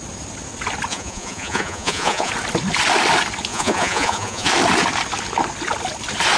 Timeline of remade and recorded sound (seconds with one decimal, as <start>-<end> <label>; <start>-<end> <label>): 0.0-0.9 recorded; 0.9-2.3 remade; 2.3-3.5 recorded; 3.5-4.5 remade; 4.5-6.4 recorded